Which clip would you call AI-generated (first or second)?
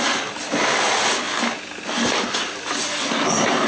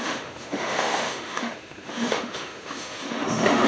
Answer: second